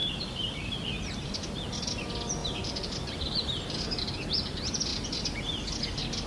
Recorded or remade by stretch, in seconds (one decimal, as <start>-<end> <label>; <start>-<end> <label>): 0.0-1.3 remade; 1.3-2.4 recorded; 2.4-4.0 remade; 4.0-6.3 recorded